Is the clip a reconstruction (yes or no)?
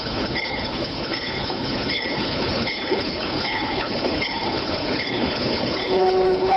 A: yes